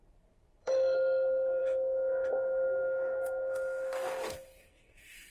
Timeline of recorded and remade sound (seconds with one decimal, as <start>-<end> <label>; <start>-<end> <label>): 0.0-5.3 remade

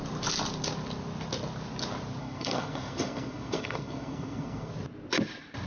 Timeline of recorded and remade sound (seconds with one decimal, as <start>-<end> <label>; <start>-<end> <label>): 0.0-2.2 recorded; 2.2-4.7 remade; 4.7-5.7 recorded

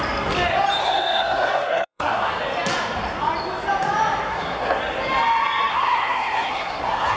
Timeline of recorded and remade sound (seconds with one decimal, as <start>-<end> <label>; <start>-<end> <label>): 0.0-0.8 recorded; 0.8-2.4 remade; 2.4-4.3 recorded; 4.3-4.8 remade; 4.8-5.7 recorded; 5.7-7.2 remade

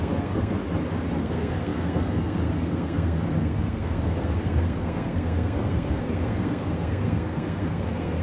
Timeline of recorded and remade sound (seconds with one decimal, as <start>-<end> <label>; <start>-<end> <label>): 0.0-0.6 remade; 0.6-1.2 recorded; 1.2-8.2 remade

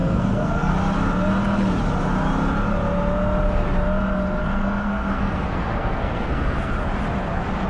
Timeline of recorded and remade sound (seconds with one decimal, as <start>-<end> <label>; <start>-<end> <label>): 0.0-0.7 remade; 0.7-4.4 recorded; 4.4-6.7 remade; 6.7-7.7 recorded